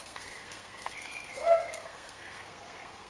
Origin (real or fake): fake